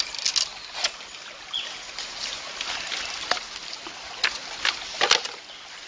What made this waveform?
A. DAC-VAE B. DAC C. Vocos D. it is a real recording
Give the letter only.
D